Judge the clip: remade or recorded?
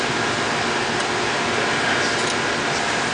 recorded